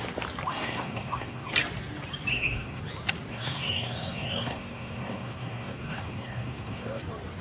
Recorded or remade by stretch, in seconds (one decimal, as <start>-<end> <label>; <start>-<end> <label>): 0.0-0.5 recorded; 0.5-1.5 remade; 1.5-2.3 recorded; 2.3-2.8 remade; 2.8-3.3 recorded; 3.3-7.0 remade; 7.0-7.4 recorded